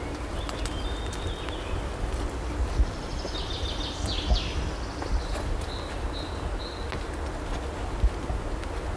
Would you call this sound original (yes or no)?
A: yes